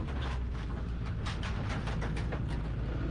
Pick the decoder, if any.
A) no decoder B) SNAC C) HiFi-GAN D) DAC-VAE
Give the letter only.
A